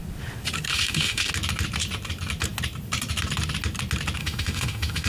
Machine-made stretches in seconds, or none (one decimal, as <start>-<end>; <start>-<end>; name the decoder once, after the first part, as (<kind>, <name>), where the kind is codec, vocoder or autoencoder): 0.7-1.3 (autoencoder, DAC-VAE); 4.2-5.1